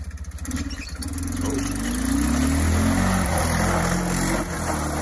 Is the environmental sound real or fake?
real